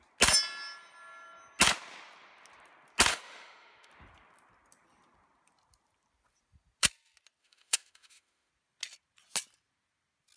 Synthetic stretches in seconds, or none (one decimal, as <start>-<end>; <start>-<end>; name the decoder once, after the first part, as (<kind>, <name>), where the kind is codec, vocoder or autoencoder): 3.1-3.9 (autoencoder, DAC-VAE); 7.4-8.5